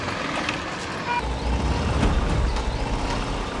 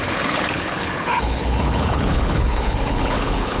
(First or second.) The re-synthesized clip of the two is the second